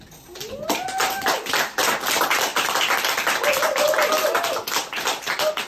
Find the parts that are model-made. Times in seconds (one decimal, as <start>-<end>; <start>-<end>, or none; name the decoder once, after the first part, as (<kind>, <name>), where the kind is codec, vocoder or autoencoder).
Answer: 1.0-1.5 (vocoder, BigVGAN v2)